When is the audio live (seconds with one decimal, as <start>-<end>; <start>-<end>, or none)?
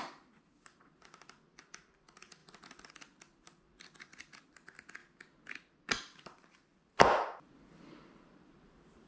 2.4-2.9; 5.0-5.5